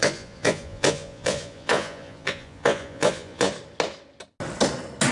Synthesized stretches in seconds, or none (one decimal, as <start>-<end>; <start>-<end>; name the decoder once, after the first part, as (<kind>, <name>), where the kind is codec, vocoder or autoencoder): 0.0-3.5 (vocoder, Vocos)